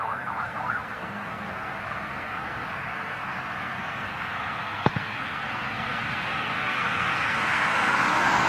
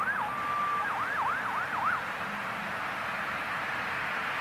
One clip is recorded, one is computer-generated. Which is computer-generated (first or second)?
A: first